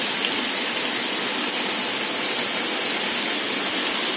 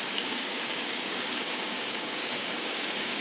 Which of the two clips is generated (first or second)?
second